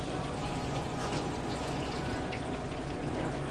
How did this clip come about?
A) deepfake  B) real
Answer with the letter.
A